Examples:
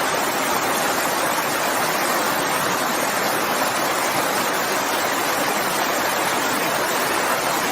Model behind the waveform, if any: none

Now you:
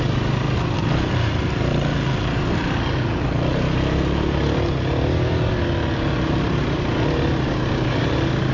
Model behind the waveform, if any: none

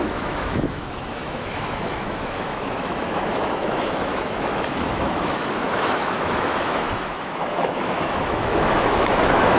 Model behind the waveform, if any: autoencoder, DAC-VAE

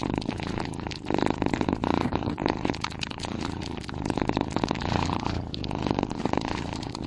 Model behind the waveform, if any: vocoder, BigVGAN v2